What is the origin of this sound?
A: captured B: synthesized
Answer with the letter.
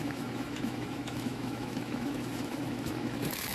B